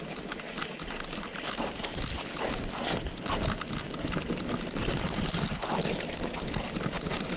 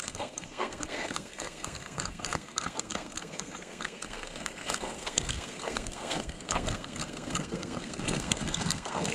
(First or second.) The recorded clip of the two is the first